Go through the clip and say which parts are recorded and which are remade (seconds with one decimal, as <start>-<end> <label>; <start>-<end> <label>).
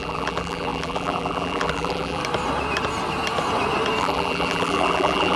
0.0-2.2 remade; 2.2-4.0 recorded; 4.0-5.4 remade